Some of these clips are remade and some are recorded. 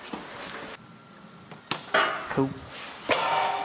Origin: recorded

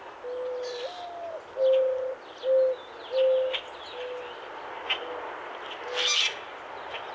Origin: recorded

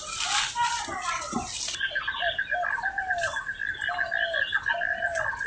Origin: recorded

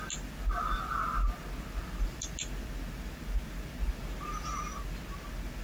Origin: recorded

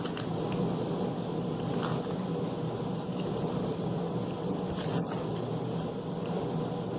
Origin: recorded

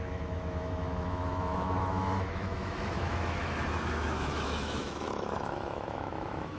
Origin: remade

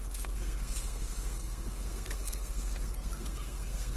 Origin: remade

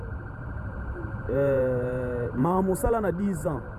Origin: remade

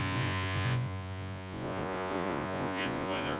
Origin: remade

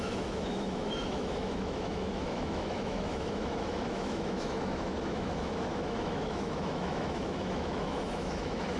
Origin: remade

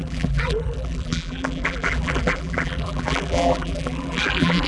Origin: remade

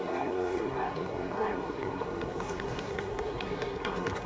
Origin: remade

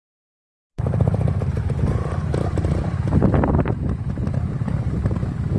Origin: recorded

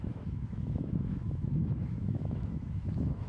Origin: remade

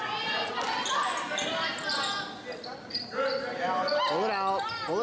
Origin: recorded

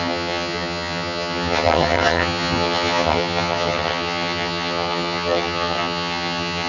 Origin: remade